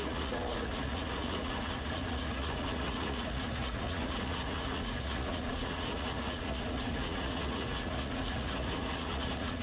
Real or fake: fake